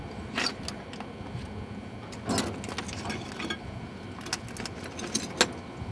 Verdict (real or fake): real